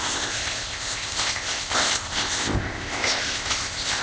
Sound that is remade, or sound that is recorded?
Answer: remade